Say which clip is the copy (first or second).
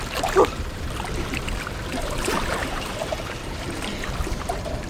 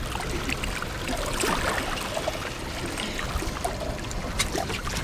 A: first